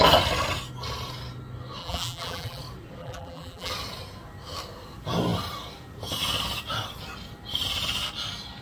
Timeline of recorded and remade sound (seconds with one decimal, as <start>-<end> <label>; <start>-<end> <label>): 0.0-1.8 recorded; 1.8-2.6 remade; 2.6-3.0 recorded; 3.0-3.7 remade; 3.7-8.6 recorded